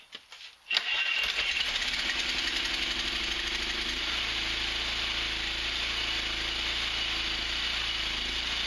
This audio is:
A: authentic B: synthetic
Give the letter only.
A